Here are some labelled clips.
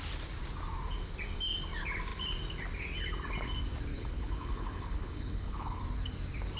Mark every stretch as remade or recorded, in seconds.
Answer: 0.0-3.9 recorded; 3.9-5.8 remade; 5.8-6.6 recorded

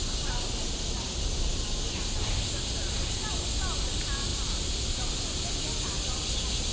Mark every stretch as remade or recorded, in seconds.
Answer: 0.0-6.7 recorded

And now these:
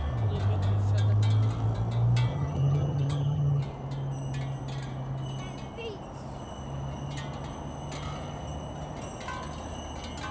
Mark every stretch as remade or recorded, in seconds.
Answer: 0.0-2.3 recorded; 2.3-3.6 remade; 3.6-10.3 recorded

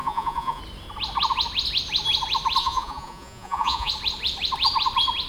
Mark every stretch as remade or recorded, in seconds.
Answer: 0.0-0.6 remade; 0.6-2.6 recorded; 2.6-3.9 remade; 3.9-5.3 recorded